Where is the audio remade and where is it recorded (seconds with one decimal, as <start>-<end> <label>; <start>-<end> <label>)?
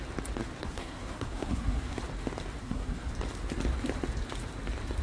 0.0-0.6 recorded; 0.6-2.0 remade; 2.0-2.6 recorded; 2.6-3.1 remade; 3.1-5.0 recorded